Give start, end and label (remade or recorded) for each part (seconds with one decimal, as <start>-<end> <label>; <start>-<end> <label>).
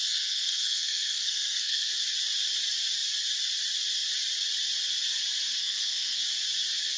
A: 0.0-1.9 remade; 1.9-5.6 recorded; 5.6-6.2 remade; 6.2-7.0 recorded